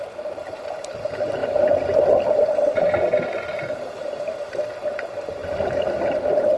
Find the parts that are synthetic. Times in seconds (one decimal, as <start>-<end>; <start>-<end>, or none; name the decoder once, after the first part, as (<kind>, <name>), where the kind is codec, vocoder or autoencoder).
none